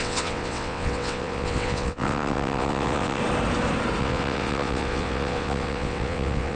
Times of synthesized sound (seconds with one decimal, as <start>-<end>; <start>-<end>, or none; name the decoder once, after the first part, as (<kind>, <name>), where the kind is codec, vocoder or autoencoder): 0.0-3.2 (vocoder, WaveNeXt); 4.0-6.6